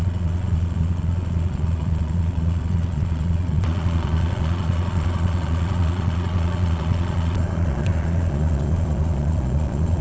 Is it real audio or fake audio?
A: fake